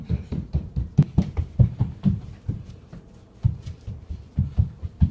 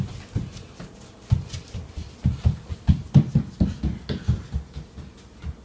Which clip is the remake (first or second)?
first